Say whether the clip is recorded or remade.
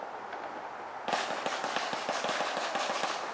recorded